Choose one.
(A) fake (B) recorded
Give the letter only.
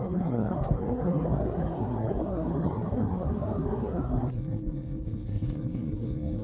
A